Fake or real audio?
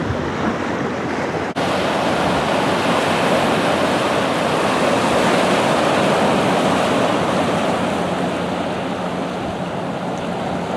real